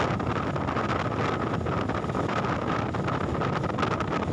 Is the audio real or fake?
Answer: real